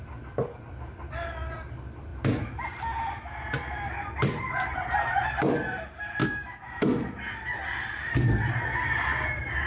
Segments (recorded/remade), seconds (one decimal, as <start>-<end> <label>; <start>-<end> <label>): 0.0-6.2 recorded; 6.2-6.8 remade; 6.8-9.7 recorded